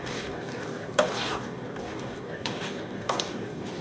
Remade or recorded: remade